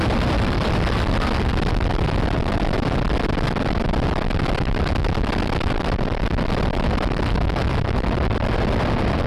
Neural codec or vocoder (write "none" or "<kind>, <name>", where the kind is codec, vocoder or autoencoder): vocoder, BigVGAN v2